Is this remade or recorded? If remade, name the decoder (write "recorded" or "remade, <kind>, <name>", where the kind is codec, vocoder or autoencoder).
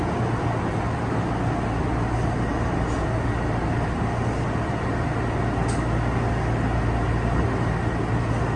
recorded